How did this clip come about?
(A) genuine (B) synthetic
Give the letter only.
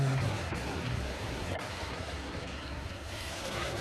B